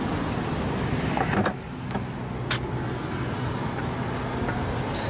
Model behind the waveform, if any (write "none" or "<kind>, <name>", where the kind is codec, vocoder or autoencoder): none